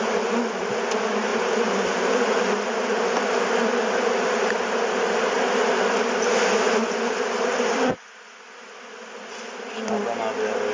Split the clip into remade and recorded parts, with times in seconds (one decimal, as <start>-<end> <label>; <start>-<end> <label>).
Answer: 0.0-10.7 recorded